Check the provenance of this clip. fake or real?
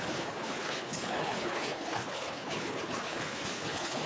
fake